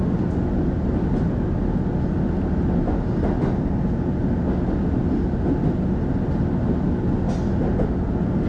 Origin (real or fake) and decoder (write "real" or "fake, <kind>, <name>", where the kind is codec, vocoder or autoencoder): real